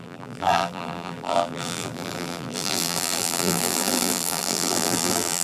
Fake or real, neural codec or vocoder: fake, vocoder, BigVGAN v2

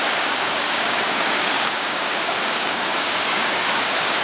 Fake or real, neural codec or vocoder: fake, codec, DAC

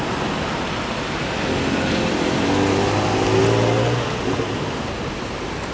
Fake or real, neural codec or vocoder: real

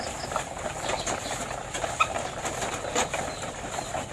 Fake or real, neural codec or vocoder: real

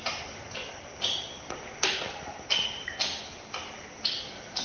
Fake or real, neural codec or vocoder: real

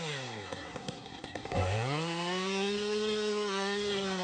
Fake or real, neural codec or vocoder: fake, codec, SNAC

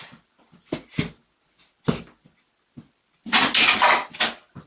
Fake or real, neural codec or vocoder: real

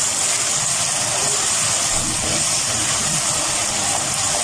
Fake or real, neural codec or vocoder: real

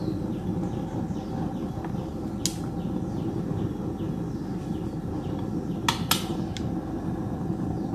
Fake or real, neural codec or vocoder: real